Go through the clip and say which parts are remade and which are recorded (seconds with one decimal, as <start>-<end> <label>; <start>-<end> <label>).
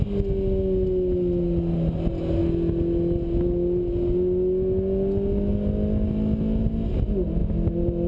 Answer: 0.0-8.1 recorded